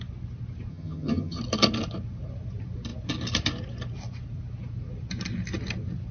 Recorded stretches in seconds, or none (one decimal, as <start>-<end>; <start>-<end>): 0.0-0.7; 1.4-6.1